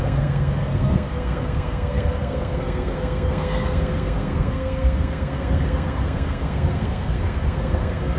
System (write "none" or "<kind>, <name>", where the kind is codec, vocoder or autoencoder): codec, SNAC